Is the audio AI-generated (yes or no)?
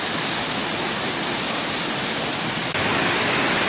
no